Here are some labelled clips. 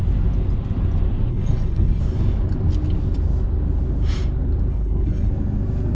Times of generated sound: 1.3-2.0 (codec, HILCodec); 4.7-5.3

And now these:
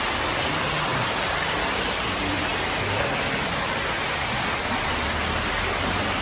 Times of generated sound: none

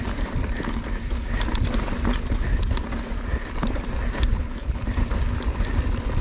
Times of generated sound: 4.3-4.8 (codec, HILCodec)